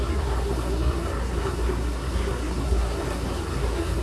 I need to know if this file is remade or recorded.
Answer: remade